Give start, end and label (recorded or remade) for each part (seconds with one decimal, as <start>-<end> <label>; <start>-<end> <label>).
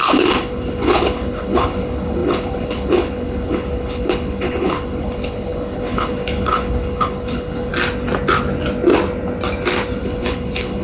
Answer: 0.0-7.7 remade; 7.7-10.0 recorded; 10.0-10.8 remade